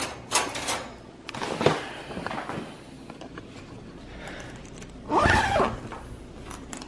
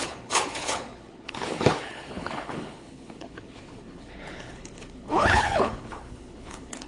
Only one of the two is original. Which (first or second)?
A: first